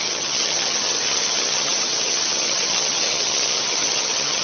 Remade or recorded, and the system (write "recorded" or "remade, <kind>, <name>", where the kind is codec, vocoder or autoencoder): remade, vocoder, HiFi-GAN